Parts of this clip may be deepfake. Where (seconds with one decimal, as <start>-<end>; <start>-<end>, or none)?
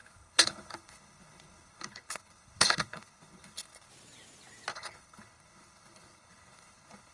0.0-3.9; 4.7-7.1